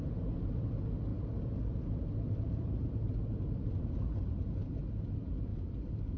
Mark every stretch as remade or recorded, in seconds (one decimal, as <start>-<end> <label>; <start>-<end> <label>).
0.0-0.7 remade; 0.7-1.1 recorded; 1.1-4.8 remade; 4.8-5.5 recorded; 5.5-6.2 remade